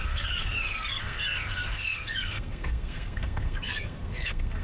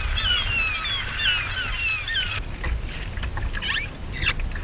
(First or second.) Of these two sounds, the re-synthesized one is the first